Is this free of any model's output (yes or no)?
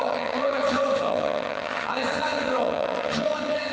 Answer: no